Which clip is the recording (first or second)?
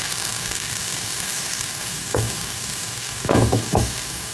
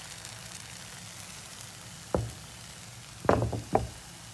second